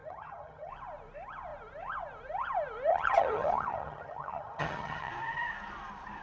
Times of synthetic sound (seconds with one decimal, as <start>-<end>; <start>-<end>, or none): 0.0-0.7; 2.9-5.1